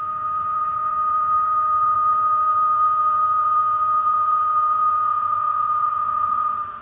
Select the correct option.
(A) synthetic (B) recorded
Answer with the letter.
A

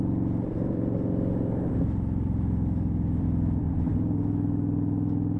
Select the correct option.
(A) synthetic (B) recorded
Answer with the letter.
B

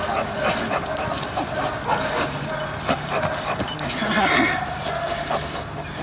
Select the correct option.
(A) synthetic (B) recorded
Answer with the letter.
B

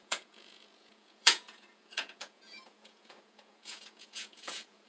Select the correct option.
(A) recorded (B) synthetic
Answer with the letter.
B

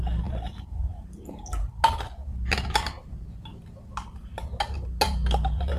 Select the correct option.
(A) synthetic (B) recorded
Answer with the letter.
B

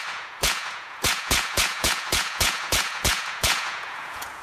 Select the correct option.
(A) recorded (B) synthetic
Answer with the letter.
B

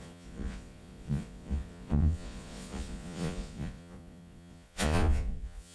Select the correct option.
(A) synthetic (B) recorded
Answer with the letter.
A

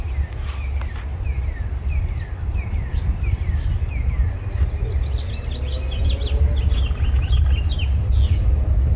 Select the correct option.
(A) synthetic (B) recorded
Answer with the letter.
B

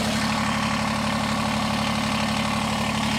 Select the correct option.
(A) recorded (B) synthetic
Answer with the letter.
A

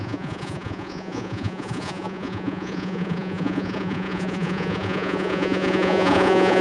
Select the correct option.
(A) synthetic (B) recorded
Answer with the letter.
A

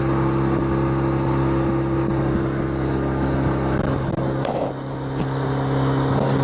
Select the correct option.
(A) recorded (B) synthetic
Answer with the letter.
A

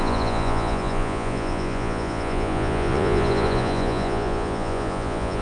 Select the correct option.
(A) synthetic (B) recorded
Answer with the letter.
A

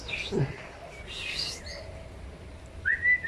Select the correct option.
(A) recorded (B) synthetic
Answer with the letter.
A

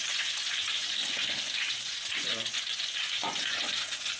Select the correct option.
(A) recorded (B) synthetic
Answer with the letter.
B